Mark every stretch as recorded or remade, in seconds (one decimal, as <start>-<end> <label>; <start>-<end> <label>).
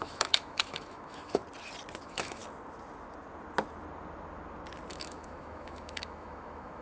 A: 0.0-1.4 remade; 1.4-2.0 recorded; 2.0-2.4 remade; 2.4-4.9 recorded; 4.9-6.8 remade